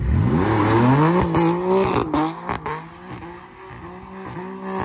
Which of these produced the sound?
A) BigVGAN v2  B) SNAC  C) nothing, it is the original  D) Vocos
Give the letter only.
C